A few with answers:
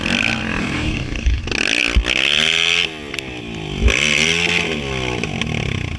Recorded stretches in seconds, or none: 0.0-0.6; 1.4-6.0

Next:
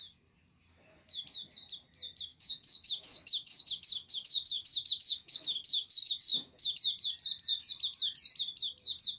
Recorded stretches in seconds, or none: 0.0-2.3; 6.8-9.2